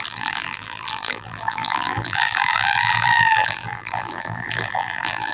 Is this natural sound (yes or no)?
no